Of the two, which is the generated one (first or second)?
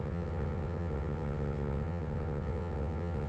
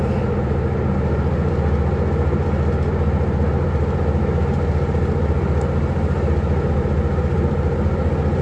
first